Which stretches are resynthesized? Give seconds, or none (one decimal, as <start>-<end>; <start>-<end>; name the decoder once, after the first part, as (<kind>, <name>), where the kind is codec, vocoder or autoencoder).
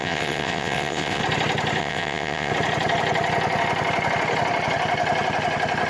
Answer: 0.0-1.2 (vocoder, WaveNeXt); 1.8-2.5